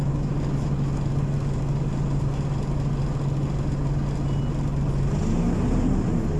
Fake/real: real